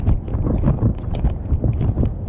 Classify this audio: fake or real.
real